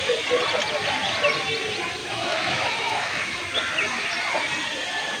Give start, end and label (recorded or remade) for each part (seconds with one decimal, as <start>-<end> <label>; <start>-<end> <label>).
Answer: 0.0-2.0 recorded; 2.0-3.4 remade; 3.4-5.2 recorded